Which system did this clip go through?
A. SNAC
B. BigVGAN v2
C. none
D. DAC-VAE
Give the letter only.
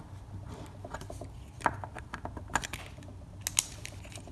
C